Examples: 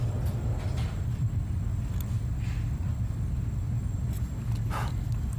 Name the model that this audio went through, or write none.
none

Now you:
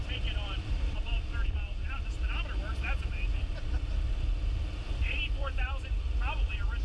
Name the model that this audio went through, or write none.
vocoder, BigVGAN v2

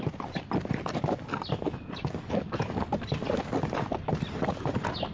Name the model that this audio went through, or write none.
none